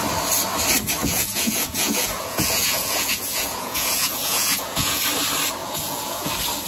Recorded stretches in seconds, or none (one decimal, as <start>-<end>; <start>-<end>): 0.0-1.0; 5.0-5.6; 6.3-6.7